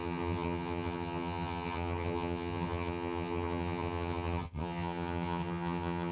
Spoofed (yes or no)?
yes